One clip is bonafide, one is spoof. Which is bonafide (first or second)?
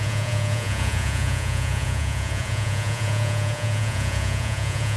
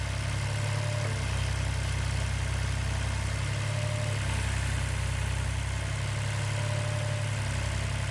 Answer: second